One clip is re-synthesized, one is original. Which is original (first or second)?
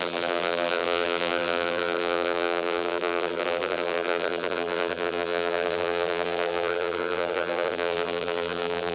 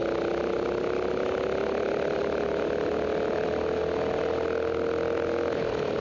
second